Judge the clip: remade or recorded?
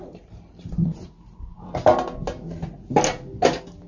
recorded